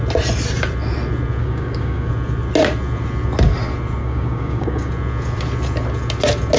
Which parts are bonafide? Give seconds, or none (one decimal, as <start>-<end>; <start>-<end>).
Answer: 0.0-1.4; 2.1-4.0; 4.9-6.6

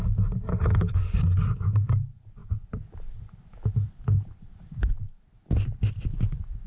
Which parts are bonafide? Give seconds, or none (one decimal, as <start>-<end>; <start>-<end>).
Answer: 0.0-0.5; 1.0-6.7

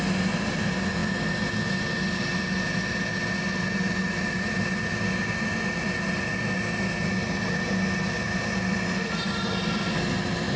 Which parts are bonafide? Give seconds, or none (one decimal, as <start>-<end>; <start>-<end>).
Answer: 0.0-10.6

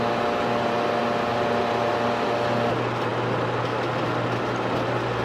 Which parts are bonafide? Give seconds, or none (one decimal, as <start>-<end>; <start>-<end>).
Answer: 0.0-5.2